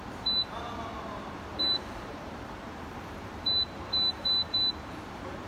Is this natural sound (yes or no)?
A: no